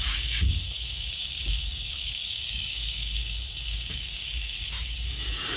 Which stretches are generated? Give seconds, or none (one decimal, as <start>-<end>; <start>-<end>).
0.0-5.6